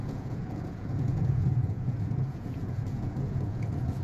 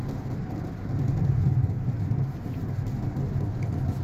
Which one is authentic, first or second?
second